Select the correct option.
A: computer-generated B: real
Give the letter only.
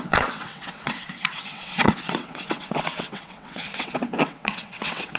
A